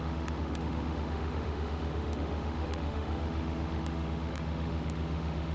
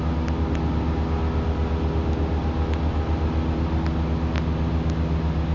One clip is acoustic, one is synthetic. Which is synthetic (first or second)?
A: first